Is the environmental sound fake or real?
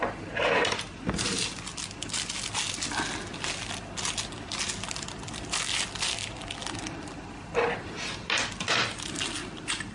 real